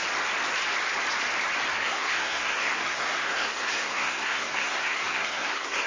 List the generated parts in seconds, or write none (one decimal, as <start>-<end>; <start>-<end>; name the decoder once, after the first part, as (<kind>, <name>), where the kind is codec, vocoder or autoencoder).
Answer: 1.7-5.9 (codec, SNAC)